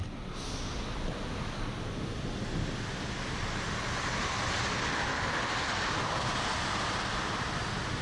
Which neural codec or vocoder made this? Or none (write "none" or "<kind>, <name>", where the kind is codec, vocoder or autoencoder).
none